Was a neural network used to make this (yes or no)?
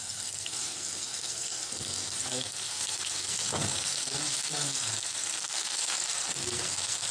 yes